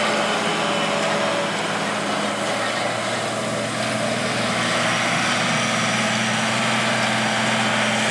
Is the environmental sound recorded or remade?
recorded